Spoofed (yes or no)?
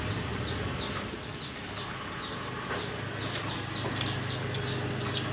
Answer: no